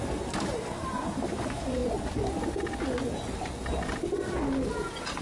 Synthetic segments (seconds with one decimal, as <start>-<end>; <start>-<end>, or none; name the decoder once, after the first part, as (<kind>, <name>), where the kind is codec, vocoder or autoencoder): 0.0-1.8 (vocoder, BigVGAN v2)